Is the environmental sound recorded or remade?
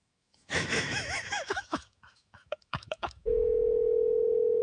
remade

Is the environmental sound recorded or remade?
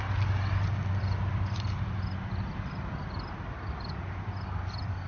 recorded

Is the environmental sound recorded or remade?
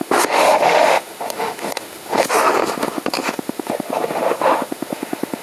remade